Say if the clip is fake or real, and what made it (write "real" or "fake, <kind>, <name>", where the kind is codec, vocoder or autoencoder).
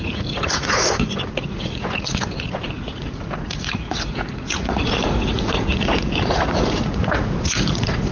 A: fake, vocoder, Vocos